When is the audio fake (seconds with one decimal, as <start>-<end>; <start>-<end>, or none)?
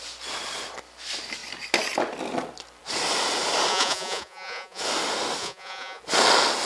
3.7-4.8; 5.4-6.0